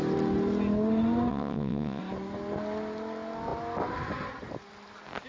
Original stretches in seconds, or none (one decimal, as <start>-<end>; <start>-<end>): 0.0-1.3; 2.0-5.3